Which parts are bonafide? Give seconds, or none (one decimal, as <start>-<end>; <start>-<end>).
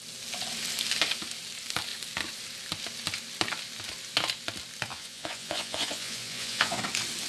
0.0-4.9; 6.8-7.3